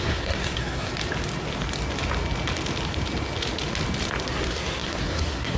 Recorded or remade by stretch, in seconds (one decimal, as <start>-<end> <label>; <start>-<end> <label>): 0.0-0.9 remade; 0.9-4.3 recorded; 4.3-5.6 remade